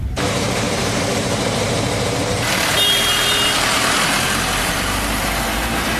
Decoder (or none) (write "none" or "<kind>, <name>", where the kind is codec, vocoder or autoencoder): vocoder, BigVGAN v2